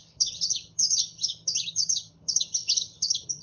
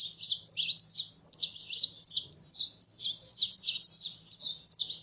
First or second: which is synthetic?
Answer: first